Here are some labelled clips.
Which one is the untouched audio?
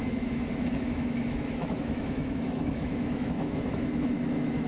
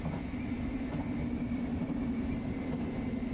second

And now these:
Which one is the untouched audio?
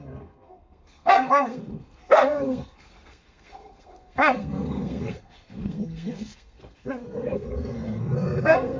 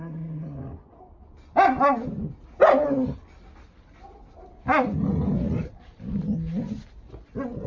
second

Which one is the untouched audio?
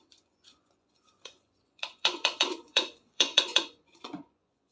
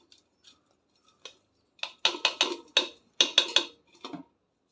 second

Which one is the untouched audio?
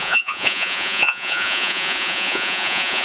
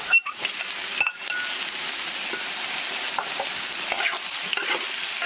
second